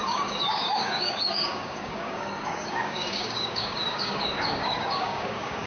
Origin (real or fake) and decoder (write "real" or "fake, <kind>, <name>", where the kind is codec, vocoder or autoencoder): fake, codec, DAC